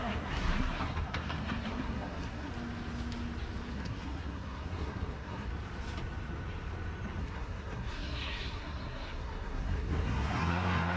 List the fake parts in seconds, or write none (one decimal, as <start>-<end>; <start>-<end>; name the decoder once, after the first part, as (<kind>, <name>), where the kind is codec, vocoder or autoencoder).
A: 0.0-2.5 (codec, SNAC); 3.7-5.5; 7.2-11.0